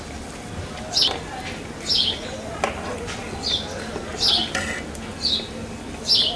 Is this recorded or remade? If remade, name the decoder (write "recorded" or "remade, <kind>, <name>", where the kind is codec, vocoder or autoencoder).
recorded